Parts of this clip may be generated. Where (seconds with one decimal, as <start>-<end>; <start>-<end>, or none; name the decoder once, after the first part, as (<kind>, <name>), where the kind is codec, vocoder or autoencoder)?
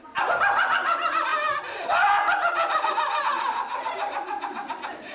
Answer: none